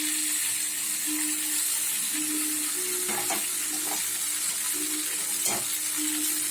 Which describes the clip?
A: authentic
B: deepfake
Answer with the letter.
A